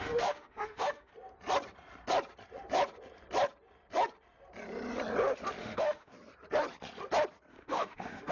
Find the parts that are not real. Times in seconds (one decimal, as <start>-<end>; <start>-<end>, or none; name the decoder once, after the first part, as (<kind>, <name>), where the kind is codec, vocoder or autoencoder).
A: 0.0-1.1 (autoencoder, DAC-VAE); 5.6-6.1; 7.5-8.3